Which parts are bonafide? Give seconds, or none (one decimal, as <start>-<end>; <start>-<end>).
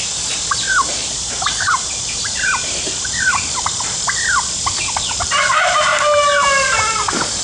0.0-1.0; 5.4-5.9; 6.8-7.4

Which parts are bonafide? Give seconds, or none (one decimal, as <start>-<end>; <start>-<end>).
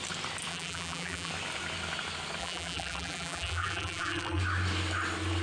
0.0-0.5; 1.3-2.4; 4.4-5.4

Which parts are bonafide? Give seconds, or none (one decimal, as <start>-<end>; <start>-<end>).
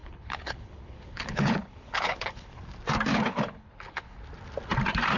2.6-3.1; 4.2-5.2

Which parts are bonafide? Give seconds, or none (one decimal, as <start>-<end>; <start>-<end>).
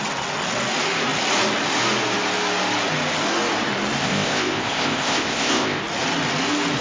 0.0-4.0; 5.8-6.8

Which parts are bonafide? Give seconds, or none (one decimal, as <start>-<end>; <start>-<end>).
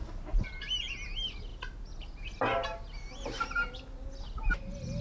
0.0-5.0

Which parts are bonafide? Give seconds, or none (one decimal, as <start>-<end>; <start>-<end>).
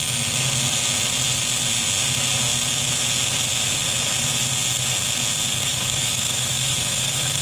0.0-5.7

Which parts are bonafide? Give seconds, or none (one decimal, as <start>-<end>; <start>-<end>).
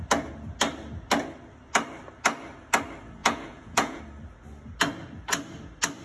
0.0-3.2; 4.0-6.0